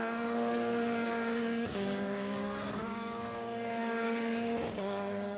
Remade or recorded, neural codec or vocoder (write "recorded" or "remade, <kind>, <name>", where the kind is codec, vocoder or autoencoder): remade, codec, DAC